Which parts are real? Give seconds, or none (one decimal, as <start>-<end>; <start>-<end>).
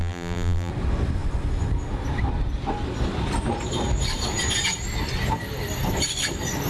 0.7-6.7